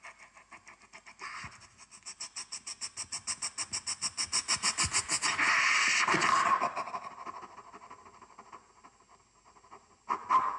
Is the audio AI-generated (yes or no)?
no